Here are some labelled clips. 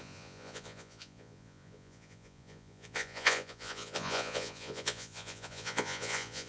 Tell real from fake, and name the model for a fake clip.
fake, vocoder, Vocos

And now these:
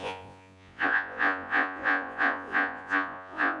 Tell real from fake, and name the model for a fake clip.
fake, vocoder, Vocos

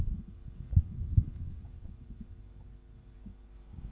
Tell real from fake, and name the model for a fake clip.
real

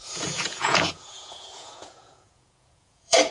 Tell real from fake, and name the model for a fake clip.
fake, vocoder, Vocos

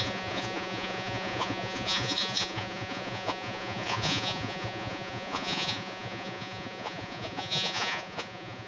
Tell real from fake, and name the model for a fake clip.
fake, vocoder, Vocos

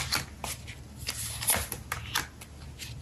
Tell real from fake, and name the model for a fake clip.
real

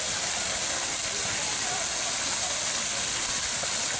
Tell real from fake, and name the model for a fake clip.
real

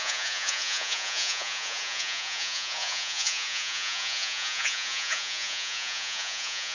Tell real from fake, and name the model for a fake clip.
fake, vocoder, Vocos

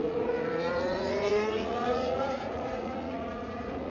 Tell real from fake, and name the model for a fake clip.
fake, vocoder, Vocos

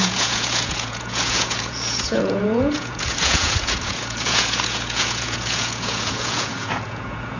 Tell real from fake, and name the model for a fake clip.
fake, vocoder, Vocos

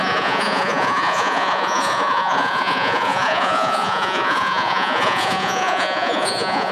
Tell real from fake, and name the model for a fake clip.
fake, vocoder, Vocos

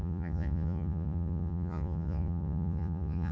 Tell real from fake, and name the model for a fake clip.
fake, vocoder, Vocos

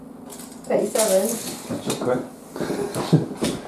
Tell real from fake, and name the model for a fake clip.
real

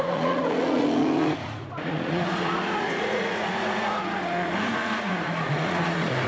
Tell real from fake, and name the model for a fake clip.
fake, vocoder, Vocos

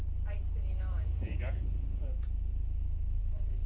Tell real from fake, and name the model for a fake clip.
fake, vocoder, Vocos